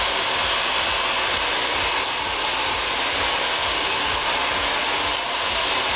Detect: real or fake real